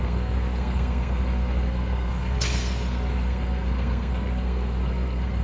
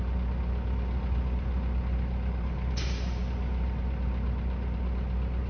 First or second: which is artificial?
first